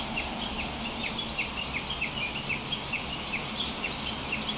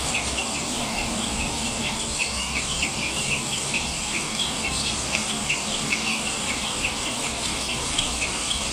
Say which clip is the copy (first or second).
second